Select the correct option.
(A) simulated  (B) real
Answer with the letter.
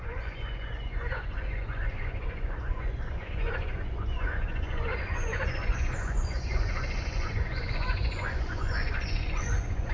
A